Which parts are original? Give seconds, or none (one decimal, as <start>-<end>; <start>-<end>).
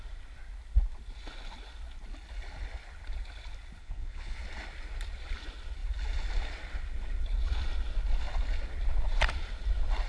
0.0-3.8; 4.4-10.1